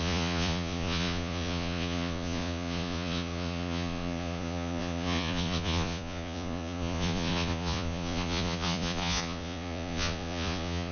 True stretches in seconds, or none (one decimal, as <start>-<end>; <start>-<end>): none